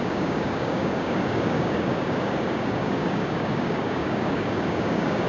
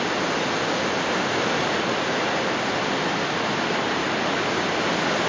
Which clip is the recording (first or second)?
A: second